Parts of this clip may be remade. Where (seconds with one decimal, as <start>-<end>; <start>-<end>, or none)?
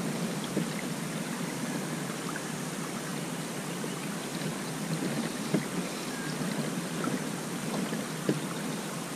none